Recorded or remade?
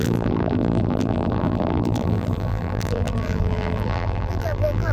remade